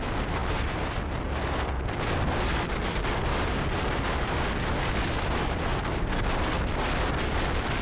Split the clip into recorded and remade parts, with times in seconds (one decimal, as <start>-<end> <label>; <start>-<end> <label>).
0.0-7.8 recorded